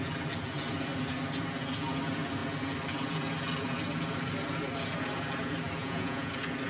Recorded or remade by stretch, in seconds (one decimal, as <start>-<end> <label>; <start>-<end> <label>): 0.0-5.8 recorded; 5.8-6.3 remade; 6.3-6.7 recorded